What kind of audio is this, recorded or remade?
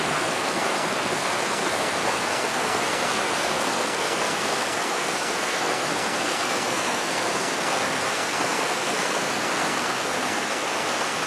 remade